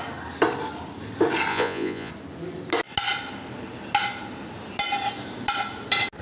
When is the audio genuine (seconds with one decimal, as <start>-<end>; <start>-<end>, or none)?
0.0-1.5; 2.1-6.2